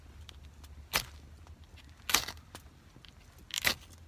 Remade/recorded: recorded